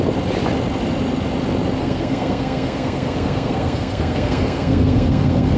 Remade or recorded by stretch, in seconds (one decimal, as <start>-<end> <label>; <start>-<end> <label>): 0.0-1.8 recorded; 1.8-5.6 remade